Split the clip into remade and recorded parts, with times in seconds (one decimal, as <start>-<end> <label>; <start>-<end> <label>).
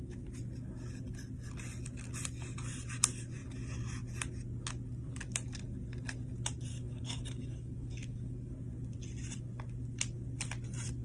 0.0-6.7 recorded; 6.7-8.5 remade; 8.5-11.0 recorded